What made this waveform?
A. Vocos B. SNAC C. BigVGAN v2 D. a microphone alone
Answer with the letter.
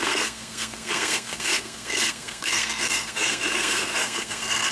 B